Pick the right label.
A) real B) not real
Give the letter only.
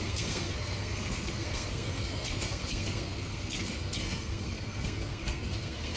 B